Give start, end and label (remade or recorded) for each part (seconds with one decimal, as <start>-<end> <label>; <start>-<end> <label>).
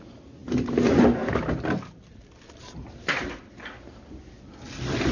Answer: 0.0-5.1 recorded